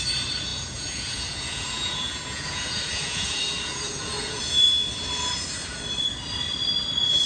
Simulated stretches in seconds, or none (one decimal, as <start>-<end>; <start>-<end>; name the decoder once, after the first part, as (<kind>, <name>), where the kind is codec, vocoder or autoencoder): 0.5-4.4 (vocoder, Vocos)